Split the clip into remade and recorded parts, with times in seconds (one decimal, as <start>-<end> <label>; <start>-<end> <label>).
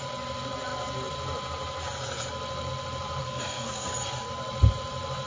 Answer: 0.0-3.2 recorded; 3.2-3.9 remade; 3.9-5.3 recorded